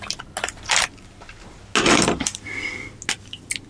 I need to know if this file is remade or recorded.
recorded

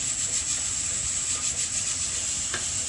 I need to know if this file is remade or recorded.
recorded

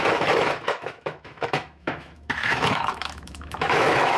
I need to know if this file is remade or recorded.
remade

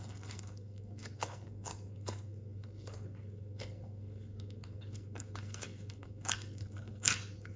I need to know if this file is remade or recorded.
remade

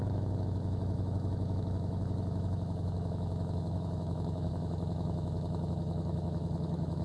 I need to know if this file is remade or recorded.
remade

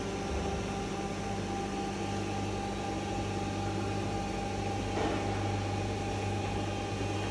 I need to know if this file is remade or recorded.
recorded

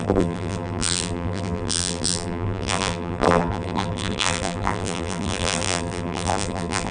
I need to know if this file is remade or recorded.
remade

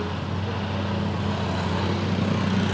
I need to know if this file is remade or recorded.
recorded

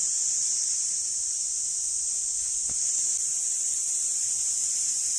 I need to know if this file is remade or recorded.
recorded